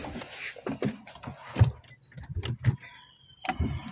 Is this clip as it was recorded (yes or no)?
yes